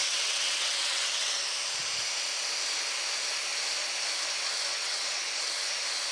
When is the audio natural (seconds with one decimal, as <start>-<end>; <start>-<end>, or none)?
1.4-4.7; 5.3-6.1